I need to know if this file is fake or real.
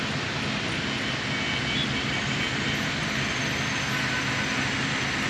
real